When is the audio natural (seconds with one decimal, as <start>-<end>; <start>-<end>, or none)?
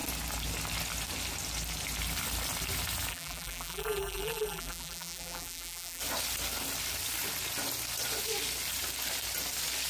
0.0-3.1; 6.0-9.9